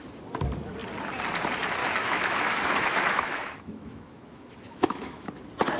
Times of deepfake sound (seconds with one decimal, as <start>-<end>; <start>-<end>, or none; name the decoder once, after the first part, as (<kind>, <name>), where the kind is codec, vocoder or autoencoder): 1.8-5.3 (autoencoder, DAC-VAE)